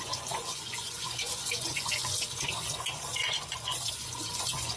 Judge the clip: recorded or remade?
remade